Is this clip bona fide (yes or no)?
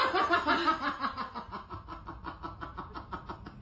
yes